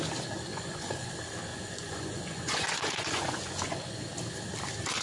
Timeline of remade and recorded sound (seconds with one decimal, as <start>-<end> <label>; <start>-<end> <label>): 0.0-0.5 recorded; 0.5-1.1 remade; 1.1-1.5 recorded; 1.5-4.0 remade; 4.0-5.0 recorded